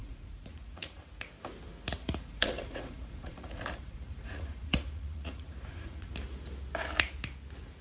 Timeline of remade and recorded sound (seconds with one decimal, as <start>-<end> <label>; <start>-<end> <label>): 0.0-1.1 remade; 1.1-2.0 recorded; 2.0-6.1 remade; 6.1-7.8 recorded